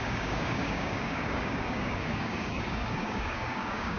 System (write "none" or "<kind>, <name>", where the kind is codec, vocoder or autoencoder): codec, DAC